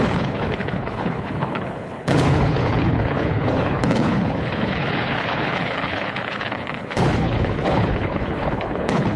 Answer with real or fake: fake